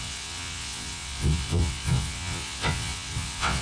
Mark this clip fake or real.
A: fake